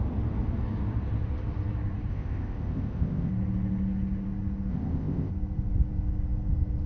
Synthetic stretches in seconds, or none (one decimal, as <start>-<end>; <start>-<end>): 2.1-3.3; 4.7-5.3